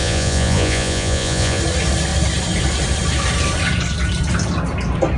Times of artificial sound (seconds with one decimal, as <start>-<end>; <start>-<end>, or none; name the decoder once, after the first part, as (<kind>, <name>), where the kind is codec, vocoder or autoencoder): 0.0-1.6 (vocoder, Vocos)